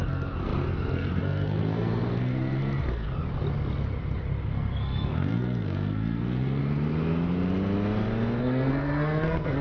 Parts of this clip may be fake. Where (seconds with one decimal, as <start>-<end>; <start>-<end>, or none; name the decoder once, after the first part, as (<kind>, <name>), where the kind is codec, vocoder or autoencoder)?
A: 0.0-3.2 (codec, SNAC); 4.4-6.6; 8.4-9.6